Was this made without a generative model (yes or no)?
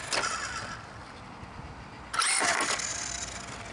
yes